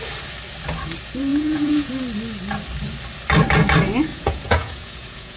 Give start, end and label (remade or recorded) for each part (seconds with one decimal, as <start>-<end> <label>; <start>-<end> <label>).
0.0-1.3 recorded; 1.3-1.9 remade; 1.9-4.1 recorded; 4.1-5.4 remade

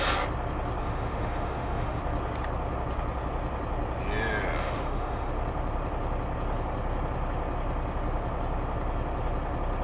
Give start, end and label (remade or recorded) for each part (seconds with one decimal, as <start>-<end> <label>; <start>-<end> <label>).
0.0-0.8 recorded; 0.8-2.0 remade; 2.0-4.6 recorded; 4.6-5.3 remade; 5.3-9.8 recorded

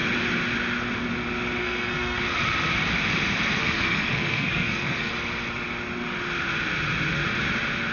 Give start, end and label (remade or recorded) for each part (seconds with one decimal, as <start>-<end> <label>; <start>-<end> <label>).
0.0-1.6 recorded; 1.6-2.2 remade; 2.2-3.6 recorded; 3.6-5.1 remade; 5.1-7.9 recorded

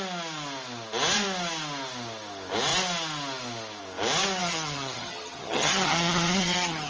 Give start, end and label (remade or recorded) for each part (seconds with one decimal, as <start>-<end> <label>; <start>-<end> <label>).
0.0-4.4 recorded; 4.4-6.9 remade

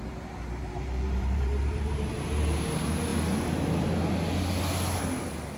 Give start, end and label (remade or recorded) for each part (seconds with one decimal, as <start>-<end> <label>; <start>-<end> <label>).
0.0-0.6 recorded; 0.6-2.1 remade; 2.1-5.6 recorded